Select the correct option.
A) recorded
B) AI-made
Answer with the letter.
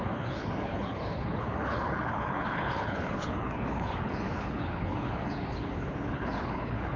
B